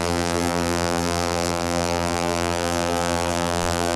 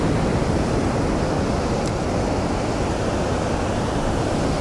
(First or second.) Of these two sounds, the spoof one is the first